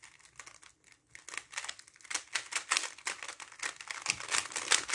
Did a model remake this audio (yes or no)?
no